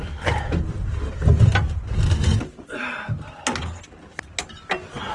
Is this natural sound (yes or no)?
yes